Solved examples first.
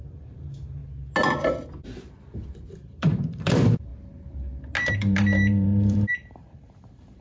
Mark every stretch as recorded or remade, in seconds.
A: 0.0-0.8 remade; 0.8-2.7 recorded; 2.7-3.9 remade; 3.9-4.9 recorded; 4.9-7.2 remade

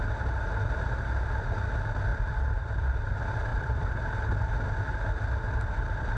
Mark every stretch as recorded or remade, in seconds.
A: 0.0-2.1 recorded; 2.1-3.1 remade; 3.1-3.5 recorded; 3.5-4.5 remade; 4.5-6.2 recorded

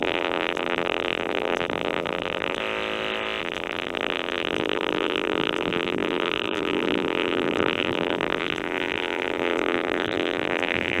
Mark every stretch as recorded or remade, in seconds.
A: 0.0-2.6 remade; 2.6-3.4 recorded; 3.4-11.0 remade

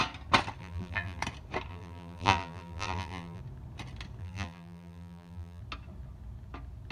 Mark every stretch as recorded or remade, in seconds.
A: 0.0-0.6 recorded; 0.6-1.2 remade; 1.2-1.7 recorded; 1.7-3.4 remade; 3.4-4.2 recorded; 4.2-5.6 remade; 5.6-6.9 recorded